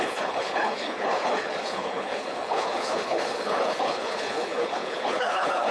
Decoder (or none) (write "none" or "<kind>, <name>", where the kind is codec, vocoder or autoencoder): codec, HILCodec